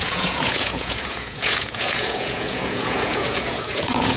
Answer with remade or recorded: remade